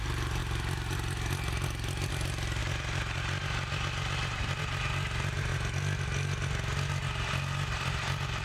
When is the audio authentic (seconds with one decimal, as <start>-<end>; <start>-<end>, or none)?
0.0-8.4